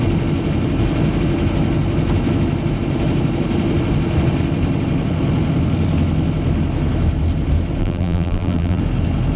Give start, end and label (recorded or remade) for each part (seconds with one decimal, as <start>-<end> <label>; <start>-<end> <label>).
0.0-7.8 recorded; 7.8-8.8 remade; 8.8-9.4 recorded